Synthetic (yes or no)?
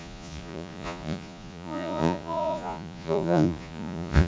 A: yes